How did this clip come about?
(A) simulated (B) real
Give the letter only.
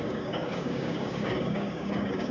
A